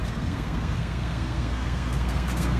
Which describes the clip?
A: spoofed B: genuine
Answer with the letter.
A